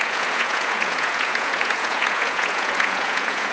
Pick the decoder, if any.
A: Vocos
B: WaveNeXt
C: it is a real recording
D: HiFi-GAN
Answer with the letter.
A